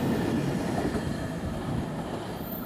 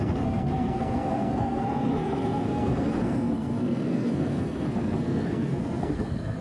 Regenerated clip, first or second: second